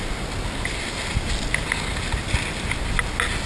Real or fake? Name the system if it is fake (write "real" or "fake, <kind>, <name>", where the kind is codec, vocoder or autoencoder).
real